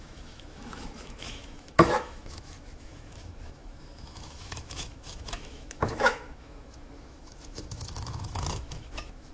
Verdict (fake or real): fake